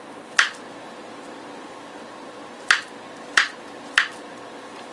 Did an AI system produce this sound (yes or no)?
no